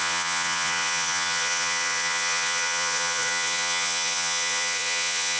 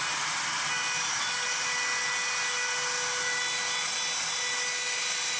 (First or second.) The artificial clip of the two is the first